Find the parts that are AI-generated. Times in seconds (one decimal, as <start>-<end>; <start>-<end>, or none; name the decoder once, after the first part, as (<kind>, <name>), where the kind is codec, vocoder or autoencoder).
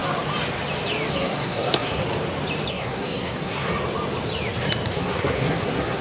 1.1-2.0 (codec, SNAC); 2.7-3.7; 4.9-6.0